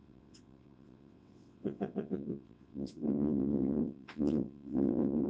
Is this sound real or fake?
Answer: fake